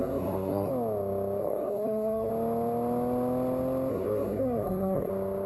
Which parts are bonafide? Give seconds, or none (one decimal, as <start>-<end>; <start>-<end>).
0.7-1.4; 2.3-3.9; 5.1-5.5

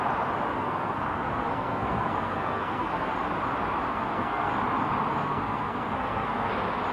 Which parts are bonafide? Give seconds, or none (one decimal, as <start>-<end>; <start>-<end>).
0.0-0.5; 3.1-3.9; 4.5-5.2; 6.5-6.9

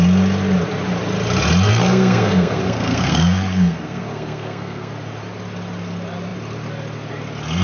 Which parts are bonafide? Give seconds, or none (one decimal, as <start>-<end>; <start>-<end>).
0.0-1.7; 4.9-7.6

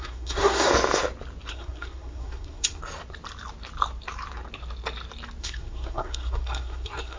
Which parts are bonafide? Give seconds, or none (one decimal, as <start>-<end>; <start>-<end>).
0.7-1.5; 2.8-5.4

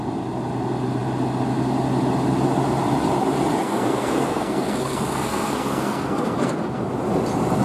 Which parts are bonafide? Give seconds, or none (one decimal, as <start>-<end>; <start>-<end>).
0.0-3.6; 6.8-7.6

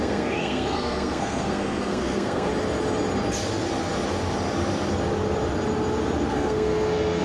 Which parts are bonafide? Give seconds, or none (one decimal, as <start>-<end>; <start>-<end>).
2.5-6.3